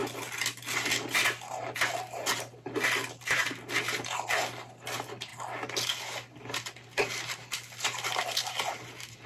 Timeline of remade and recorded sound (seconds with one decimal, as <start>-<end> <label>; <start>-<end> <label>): 0.0-9.3 recorded